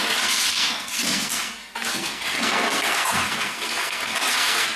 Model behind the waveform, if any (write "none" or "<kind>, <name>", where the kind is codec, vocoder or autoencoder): codec, SNAC